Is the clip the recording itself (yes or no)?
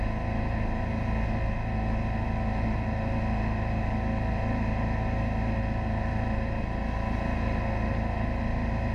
yes